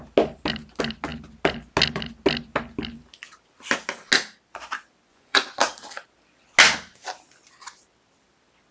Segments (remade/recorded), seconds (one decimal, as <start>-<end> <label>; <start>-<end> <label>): 0.0-5.1 recorded; 5.1-5.6 remade; 5.6-8.7 recorded